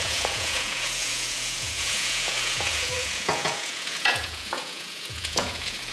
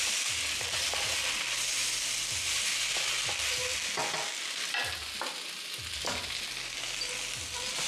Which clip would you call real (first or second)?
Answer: second